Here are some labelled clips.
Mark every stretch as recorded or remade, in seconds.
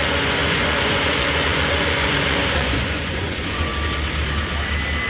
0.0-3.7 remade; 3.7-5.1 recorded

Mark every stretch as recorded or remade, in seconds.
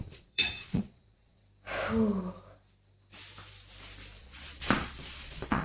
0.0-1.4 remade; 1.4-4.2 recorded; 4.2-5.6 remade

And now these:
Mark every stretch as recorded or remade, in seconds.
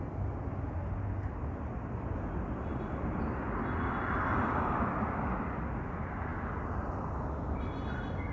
0.0-8.3 recorded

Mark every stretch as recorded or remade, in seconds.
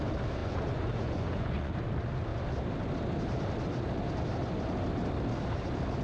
0.0-0.4 recorded; 0.4-1.7 remade; 1.7-6.0 recorded